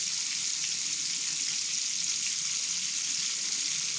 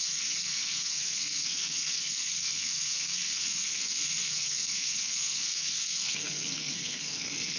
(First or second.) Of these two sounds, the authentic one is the first